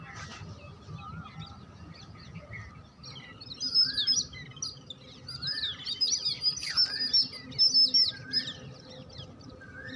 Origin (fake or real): real